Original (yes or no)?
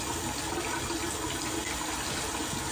yes